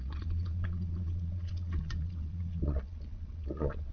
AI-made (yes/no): yes